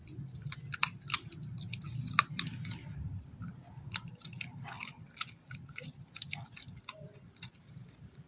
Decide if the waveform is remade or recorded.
recorded